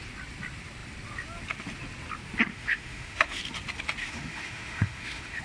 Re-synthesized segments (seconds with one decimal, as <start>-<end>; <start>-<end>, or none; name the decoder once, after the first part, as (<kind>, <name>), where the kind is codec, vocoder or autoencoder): 2.5-3.4 (autoencoder, DAC-VAE); 4.0-5.4